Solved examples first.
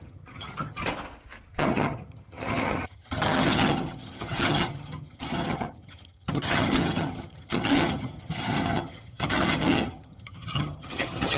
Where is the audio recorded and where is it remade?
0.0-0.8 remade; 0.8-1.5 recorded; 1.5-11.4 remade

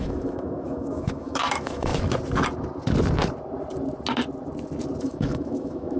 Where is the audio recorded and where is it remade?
0.0-1.9 remade; 1.9-5.0 recorded; 5.0-6.0 remade

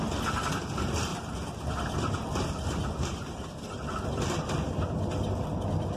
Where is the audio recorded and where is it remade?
0.0-1.1 recorded; 1.1-4.7 remade; 4.7-6.0 recorded

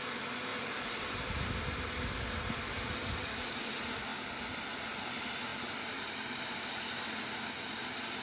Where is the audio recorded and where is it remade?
0.0-0.5 recorded; 0.5-1.5 remade; 1.5-5.5 recorded; 5.5-6.7 remade; 6.7-8.2 recorded

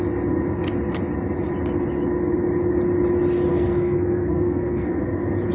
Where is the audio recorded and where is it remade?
0.0-3.5 recorded; 3.5-5.0 remade; 5.0-5.5 recorded

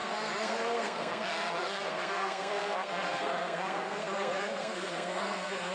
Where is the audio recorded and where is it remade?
0.0-5.7 remade

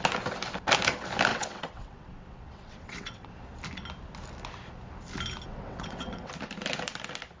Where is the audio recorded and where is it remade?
0.0-1.3 recorded; 1.3-3.3 remade; 3.3-5.5 recorded; 5.5-6.3 remade; 6.3-7.4 recorded

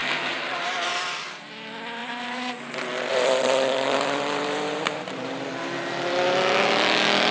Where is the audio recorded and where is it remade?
0.0-1.5 remade; 1.5-2.0 recorded; 2.0-2.5 remade; 2.5-3.1 recorded; 3.1-5.5 remade; 5.5-7.3 recorded